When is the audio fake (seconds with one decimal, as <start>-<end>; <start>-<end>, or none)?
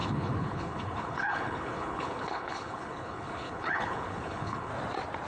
0.0-4.7